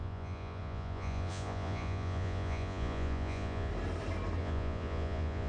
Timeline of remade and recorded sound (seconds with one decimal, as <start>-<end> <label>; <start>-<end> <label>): 0.0-3.7 remade; 3.7-4.4 recorded; 4.4-5.5 remade